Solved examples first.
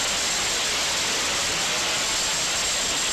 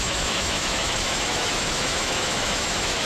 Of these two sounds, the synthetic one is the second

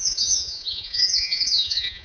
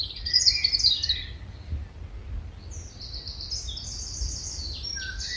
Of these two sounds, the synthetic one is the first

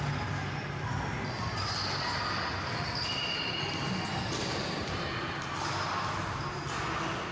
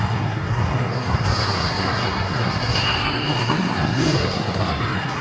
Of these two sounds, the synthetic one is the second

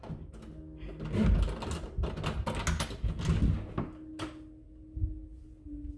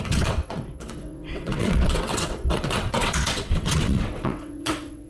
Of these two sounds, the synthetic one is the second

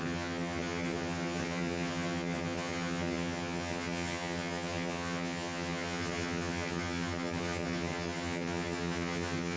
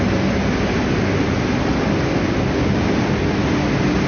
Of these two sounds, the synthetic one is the first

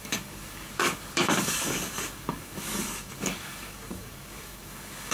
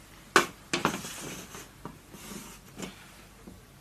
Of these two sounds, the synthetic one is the first